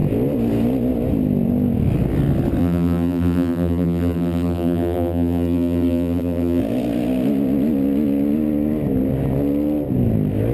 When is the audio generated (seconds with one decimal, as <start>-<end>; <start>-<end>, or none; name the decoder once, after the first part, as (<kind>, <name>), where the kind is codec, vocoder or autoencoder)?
2.6-6.6 (vocoder, BigVGAN v2)

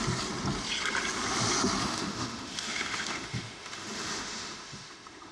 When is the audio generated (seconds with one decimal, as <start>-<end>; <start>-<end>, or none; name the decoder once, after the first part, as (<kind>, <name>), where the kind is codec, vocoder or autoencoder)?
1.8-5.3 (autoencoder, DAC-VAE)